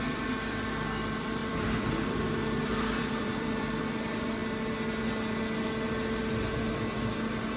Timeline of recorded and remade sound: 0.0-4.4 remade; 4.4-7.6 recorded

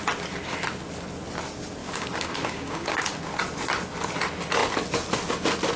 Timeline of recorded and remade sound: 0.0-1.8 recorded; 1.8-3.0 remade; 3.0-5.8 recorded

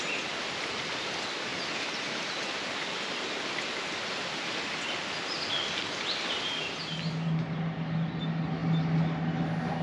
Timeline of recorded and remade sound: 0.0-9.8 recorded